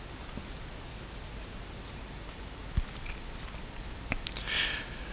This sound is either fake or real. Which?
real